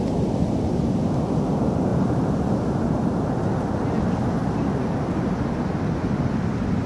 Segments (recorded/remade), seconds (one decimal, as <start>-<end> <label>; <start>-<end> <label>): 0.0-6.9 recorded